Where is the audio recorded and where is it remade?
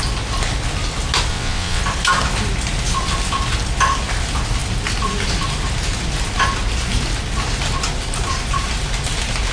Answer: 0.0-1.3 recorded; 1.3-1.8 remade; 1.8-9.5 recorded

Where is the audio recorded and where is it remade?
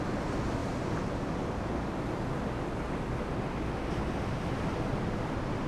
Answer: 0.0-5.7 recorded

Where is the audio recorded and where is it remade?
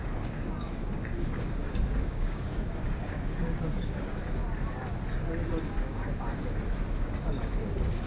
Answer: 0.0-4.4 remade; 4.4-5.6 recorded; 5.6-6.4 remade; 6.4-6.9 recorded; 6.9-8.1 remade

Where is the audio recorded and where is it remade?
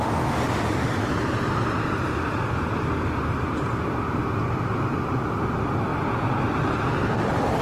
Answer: 0.0-7.6 recorded